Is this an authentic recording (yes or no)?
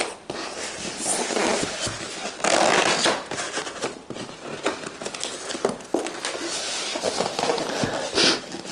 yes